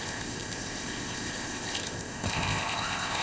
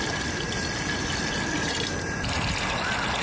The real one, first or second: second